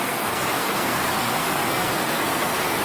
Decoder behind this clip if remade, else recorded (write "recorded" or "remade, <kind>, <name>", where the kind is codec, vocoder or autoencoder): remade, codec, SNAC